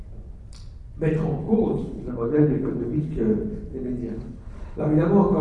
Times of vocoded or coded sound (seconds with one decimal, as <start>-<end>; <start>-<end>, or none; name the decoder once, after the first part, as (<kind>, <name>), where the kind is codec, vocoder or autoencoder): 1.4-3.2 (codec, HILCodec); 4.1-4.8